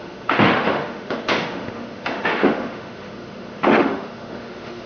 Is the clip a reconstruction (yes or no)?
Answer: yes